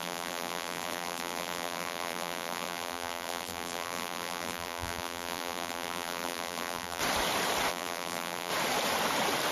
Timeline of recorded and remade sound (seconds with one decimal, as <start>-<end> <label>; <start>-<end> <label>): 0.0-7.0 remade; 7.0-7.7 recorded; 7.7-8.5 remade; 8.5-9.5 recorded